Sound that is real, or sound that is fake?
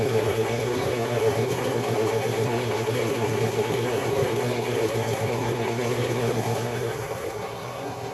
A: fake